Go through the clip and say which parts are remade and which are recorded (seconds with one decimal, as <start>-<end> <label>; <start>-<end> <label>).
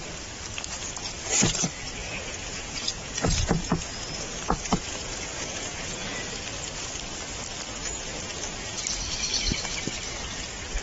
0.0-2.0 recorded; 2.0-6.3 remade; 6.3-10.8 recorded